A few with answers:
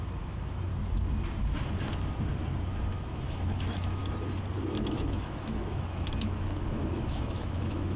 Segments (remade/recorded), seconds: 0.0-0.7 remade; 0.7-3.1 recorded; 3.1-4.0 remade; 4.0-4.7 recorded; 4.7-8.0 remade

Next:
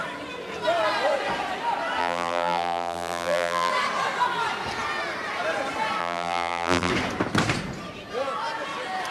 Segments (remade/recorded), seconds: 0.0-2.0 recorded; 2.0-3.7 remade; 3.7-6.0 recorded; 6.0-6.9 remade; 6.9-9.1 recorded

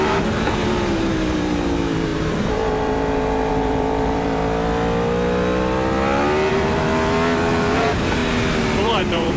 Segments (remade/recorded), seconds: 0.0-4.4 remade; 4.4-6.5 recorded; 6.5-6.9 remade; 6.9-7.7 recorded; 7.7-8.2 remade; 8.2-8.8 recorded; 8.8-9.4 remade